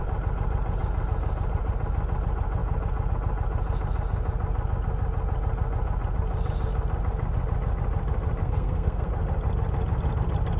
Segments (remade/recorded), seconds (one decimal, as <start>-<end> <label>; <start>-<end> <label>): 0.0-8.4 recorded; 8.4-9.1 remade; 9.1-10.6 recorded